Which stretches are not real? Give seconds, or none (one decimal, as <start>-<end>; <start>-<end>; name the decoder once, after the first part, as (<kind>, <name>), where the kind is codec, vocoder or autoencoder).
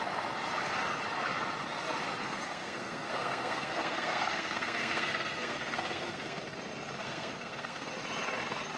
2.2-6.4 (codec, SNAC); 7.0-7.9